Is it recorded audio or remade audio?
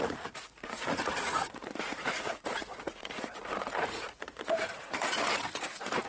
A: remade